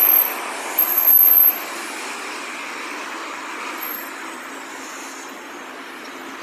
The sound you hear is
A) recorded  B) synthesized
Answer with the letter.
B